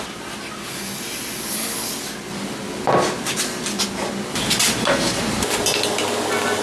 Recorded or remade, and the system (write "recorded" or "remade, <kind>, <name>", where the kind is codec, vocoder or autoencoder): recorded